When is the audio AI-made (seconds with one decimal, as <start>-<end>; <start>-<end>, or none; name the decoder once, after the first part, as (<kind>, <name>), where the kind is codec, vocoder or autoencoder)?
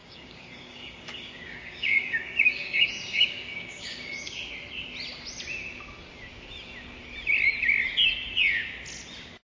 0.0-4.5 (codec, DAC)